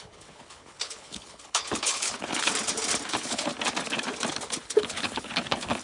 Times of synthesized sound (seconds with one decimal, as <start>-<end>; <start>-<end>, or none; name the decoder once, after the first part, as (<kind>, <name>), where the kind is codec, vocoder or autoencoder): 0.0-2.5 (codec, HILCodec); 3.1-3.5; 4.6-5.8